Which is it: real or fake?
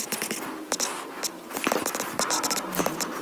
real